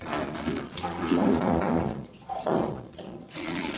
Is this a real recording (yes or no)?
no